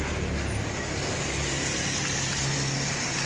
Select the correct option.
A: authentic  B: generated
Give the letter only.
A